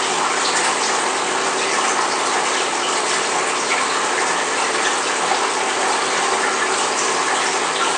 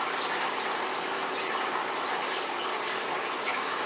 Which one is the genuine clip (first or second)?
first